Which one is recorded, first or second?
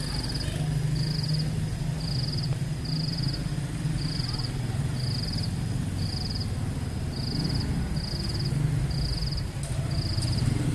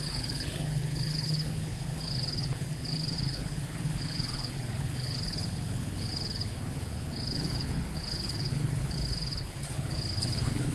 first